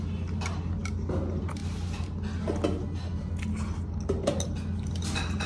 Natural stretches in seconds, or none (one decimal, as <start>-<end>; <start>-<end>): 0.0-5.5

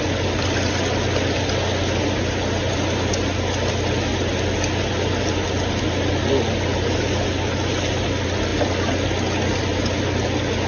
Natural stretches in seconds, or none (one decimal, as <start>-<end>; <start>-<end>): 0.0-10.7

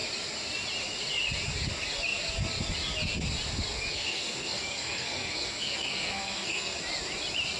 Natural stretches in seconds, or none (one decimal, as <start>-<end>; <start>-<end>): 0.0-3.9; 6.8-7.6